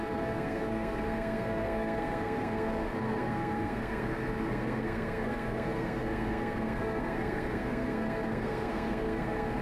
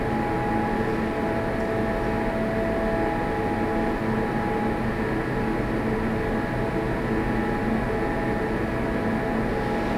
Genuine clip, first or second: second